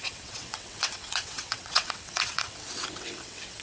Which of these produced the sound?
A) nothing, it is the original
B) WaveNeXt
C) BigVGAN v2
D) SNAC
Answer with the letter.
B